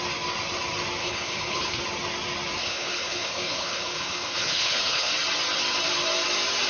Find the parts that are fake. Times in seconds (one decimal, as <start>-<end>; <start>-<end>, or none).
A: 1.0-1.8; 2.6-5.1